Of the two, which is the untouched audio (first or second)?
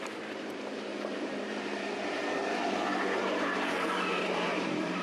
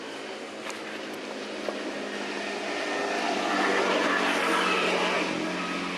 second